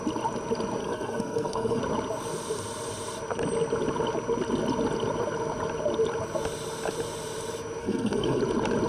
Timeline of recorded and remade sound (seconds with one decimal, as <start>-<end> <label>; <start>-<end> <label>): 0.0-0.8 recorded; 0.8-1.8 remade; 1.8-7.8 recorded; 7.8-8.4 remade; 8.4-8.9 recorded